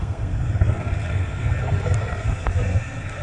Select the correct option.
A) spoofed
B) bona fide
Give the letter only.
A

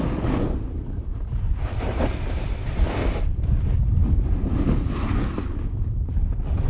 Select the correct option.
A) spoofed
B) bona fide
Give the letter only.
B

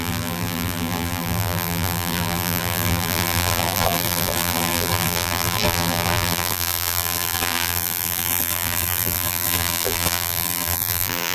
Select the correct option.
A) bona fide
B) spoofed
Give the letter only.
B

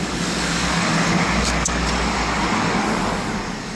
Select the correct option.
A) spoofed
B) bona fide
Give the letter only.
A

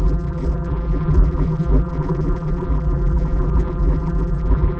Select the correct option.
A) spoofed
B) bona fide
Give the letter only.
A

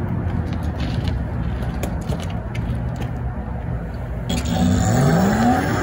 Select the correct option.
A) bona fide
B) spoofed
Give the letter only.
A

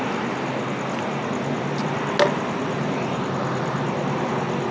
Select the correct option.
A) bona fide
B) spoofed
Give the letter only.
A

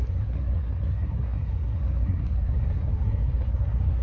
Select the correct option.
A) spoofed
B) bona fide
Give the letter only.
A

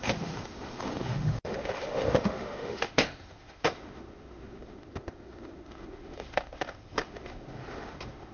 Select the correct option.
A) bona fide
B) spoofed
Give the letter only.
B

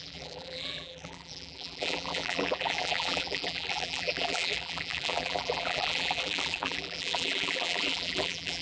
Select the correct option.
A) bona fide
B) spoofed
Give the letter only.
B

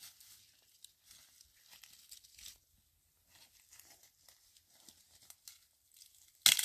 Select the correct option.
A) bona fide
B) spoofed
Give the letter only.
A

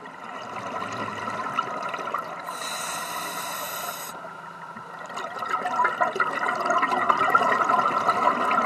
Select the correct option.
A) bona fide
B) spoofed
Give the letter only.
A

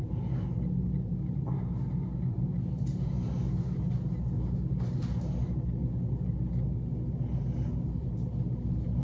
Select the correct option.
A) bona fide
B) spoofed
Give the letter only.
A